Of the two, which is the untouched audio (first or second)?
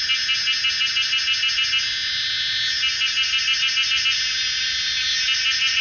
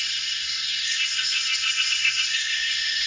first